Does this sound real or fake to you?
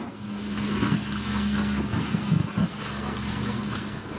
fake